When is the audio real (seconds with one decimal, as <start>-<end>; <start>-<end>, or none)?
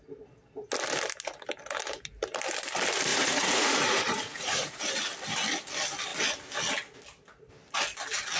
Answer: 0.0-3.1; 4.8-8.4